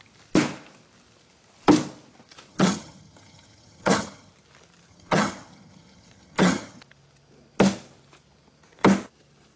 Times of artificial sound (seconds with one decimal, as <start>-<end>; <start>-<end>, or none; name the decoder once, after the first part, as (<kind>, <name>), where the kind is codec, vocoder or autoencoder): 2.5-4.3 (vocoder, HiFi-GAN); 4.9-6.8